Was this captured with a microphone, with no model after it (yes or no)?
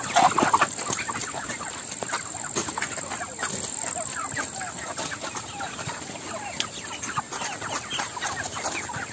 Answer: yes